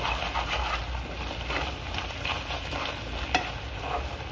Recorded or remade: recorded